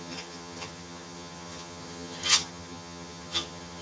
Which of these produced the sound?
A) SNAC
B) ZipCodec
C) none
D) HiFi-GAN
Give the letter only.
D